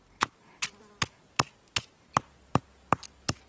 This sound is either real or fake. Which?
real